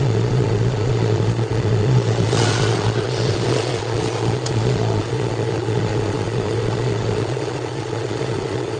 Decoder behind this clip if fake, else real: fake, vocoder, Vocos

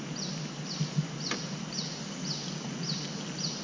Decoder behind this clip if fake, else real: real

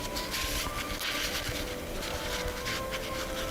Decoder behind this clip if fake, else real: real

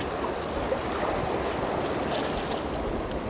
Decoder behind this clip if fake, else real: real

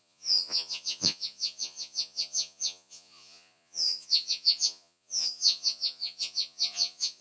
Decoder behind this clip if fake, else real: fake, vocoder, Vocos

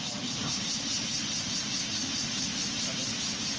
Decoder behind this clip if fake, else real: real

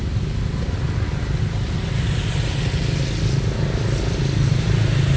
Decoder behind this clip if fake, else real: real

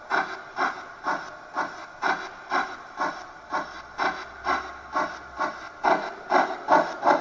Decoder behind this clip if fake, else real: real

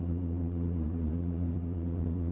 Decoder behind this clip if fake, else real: fake, vocoder, Vocos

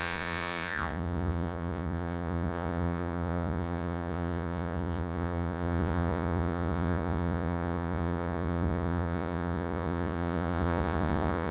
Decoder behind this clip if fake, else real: fake, vocoder, Vocos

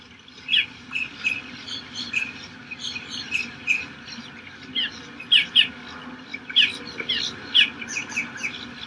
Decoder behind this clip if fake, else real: real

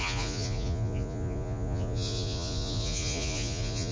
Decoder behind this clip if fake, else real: fake, vocoder, Vocos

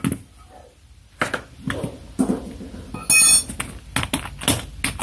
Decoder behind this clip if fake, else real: real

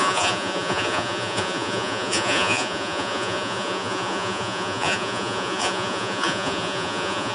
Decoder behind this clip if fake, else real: fake, vocoder, Vocos